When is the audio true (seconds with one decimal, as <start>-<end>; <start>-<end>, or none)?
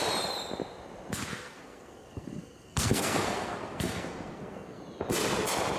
0.0-1.3; 4.8-5.8